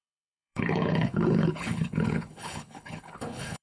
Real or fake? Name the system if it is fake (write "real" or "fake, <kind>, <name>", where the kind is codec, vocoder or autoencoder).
fake, codec, HILCodec